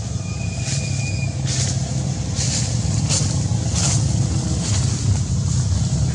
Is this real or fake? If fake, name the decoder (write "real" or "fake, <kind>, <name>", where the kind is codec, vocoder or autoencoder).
real